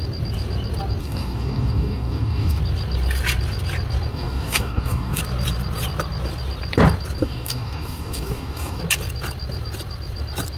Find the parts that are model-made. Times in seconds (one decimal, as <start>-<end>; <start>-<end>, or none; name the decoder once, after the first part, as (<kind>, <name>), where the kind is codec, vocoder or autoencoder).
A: 1.0-2.6 (codec, DAC); 4.1-5.2; 7.2-8.8